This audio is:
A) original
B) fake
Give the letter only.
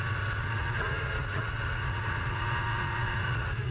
B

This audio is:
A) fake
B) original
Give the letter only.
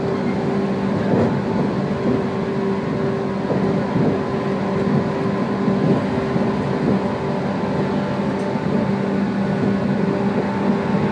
B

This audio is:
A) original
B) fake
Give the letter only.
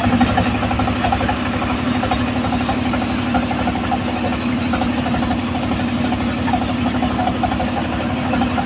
A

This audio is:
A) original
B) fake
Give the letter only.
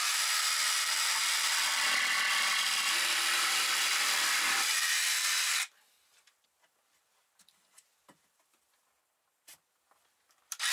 B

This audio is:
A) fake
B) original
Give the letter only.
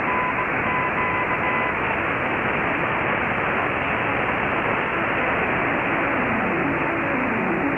B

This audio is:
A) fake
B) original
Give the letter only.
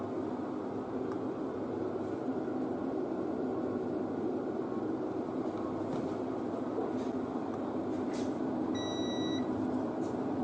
B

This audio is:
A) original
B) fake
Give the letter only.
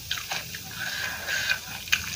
A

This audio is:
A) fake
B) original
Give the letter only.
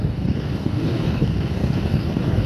A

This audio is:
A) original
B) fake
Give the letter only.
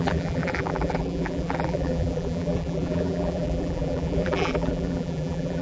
B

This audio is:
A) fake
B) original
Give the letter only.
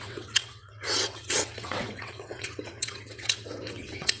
A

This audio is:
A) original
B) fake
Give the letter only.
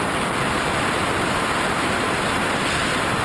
A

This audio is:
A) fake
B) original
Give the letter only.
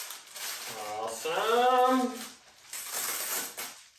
B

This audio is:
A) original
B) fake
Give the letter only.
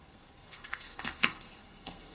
B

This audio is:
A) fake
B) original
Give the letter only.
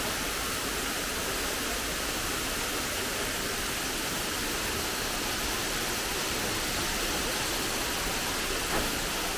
B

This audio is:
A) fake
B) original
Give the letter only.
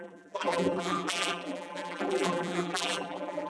A